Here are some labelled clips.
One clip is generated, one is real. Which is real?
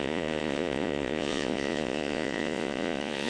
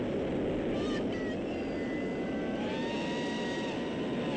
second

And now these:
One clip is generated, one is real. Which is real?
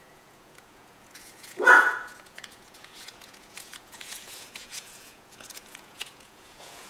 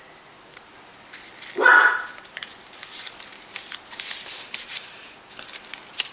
second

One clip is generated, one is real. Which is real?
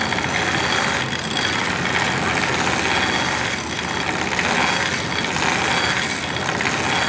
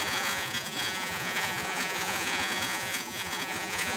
first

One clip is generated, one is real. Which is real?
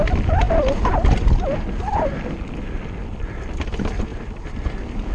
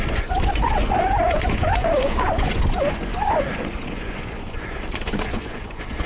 first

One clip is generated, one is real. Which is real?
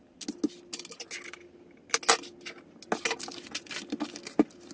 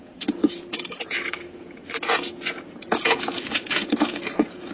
first